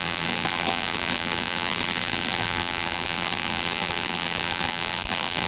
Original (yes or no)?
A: no